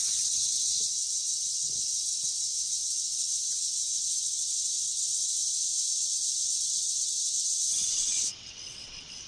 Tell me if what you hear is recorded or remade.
remade